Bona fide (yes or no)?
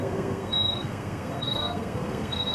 no